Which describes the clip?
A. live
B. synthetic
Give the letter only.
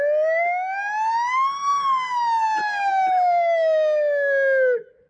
A